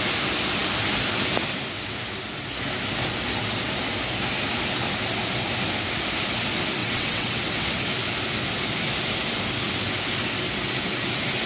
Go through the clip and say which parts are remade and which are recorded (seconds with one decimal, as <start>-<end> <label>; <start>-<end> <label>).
0.0-6.8 recorded; 6.8-7.8 remade; 7.8-11.5 recorded